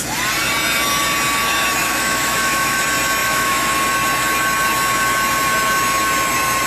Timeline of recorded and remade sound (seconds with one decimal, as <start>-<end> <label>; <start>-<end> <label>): 0.0-1.8 recorded; 1.8-2.8 remade; 2.8-3.2 recorded; 3.2-3.7 remade; 3.7-6.7 recorded